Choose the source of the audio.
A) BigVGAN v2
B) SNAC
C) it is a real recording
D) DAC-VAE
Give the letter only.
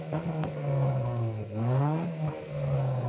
B